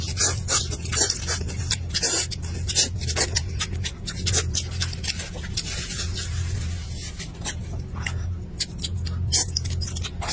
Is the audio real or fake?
real